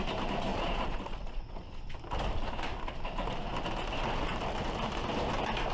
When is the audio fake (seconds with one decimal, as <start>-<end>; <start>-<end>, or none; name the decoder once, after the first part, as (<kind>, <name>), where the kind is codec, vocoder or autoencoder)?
0.5-1.6 (vocoder, Vocos)